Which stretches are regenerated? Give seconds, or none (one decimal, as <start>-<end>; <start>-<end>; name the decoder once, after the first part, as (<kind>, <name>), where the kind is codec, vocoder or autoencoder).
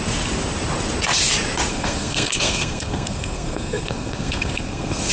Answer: 1.7-5.1 (codec, SNAC)